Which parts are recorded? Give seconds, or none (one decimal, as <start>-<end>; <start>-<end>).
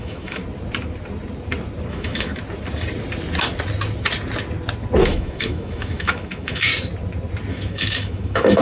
0.4-1.9; 2.3-5.0; 6.7-7.5